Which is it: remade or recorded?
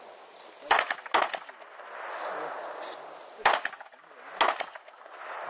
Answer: recorded